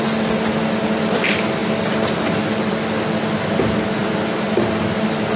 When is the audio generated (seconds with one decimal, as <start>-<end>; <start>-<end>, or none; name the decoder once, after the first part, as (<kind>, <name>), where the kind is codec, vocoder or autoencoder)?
none